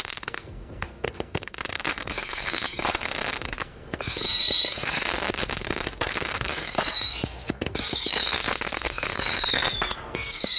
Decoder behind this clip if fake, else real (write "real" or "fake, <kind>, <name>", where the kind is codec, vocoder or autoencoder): fake, codec, SNAC